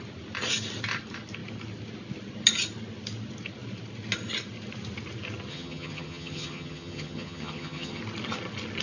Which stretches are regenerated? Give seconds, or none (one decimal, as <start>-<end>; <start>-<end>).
5.5-8.0